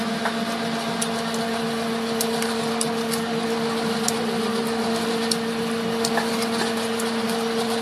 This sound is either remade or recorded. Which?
recorded